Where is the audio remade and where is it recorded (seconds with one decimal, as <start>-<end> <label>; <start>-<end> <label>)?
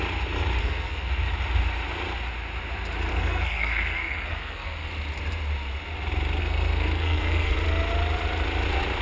0.0-0.6 recorded; 0.6-1.1 remade; 1.1-3.1 recorded; 3.1-4.9 remade; 4.9-6.4 recorded; 6.4-7.5 remade; 7.5-9.0 recorded